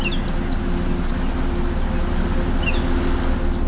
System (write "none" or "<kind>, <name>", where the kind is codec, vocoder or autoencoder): none